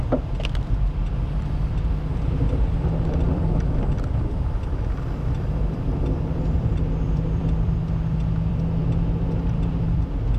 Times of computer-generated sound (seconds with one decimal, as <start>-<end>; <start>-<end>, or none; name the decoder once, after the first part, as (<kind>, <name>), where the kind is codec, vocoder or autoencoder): 0.0-8.8 (vocoder, BigVGAN v2); 9.4-10.4